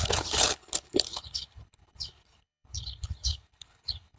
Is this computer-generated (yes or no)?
yes